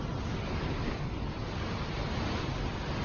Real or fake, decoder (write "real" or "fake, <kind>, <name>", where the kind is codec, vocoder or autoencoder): real